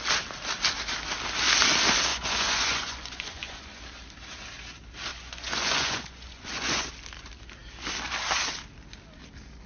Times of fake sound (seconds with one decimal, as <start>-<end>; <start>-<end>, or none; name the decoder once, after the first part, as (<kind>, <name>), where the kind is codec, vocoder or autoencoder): 2.1-3.8 (vocoder, Vocos); 5.1-6.9